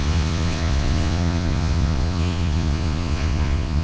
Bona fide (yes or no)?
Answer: no